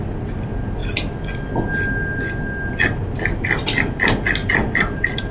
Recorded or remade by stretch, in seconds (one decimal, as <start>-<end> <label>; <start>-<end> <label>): 0.0-4.4 recorded; 4.4-5.3 remade